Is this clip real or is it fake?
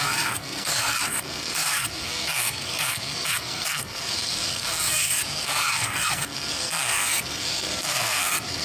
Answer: fake